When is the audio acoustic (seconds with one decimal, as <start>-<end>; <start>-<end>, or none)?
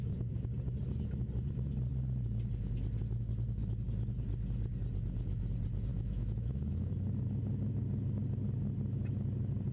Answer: 0.0-5.9; 6.9-9.7